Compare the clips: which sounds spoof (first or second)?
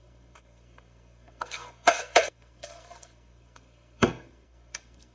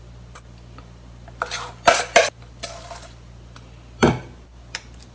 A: first